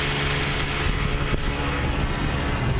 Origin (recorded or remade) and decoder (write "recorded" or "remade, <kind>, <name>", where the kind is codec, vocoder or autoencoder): recorded